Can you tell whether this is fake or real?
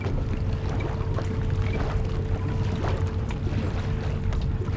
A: real